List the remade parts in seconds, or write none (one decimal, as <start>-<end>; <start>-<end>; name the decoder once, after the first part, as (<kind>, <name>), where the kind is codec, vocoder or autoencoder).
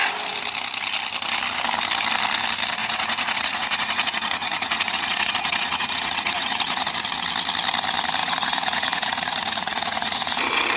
2.8-6.9 (vocoder, Vocos); 8.2-10.4